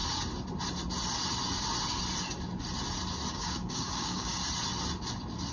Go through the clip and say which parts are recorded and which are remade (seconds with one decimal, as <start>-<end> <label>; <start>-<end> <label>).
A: 0.0-3.3 recorded; 3.3-4.4 remade; 4.4-5.5 recorded